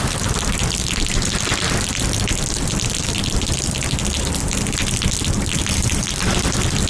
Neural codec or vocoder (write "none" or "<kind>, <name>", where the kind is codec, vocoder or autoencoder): none